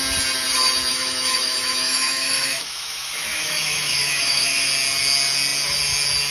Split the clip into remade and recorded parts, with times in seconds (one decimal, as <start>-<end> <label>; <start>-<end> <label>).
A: 0.0-0.9 recorded; 0.9-4.7 remade; 4.7-6.3 recorded